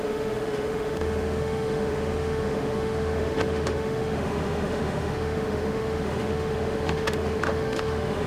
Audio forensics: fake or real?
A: fake